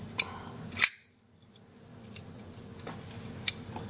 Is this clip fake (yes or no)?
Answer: no